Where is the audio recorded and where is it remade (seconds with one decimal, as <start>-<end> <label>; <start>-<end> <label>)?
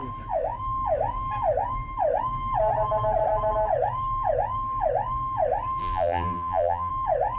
0.0-5.8 recorded; 5.8-6.9 remade; 6.9-7.4 recorded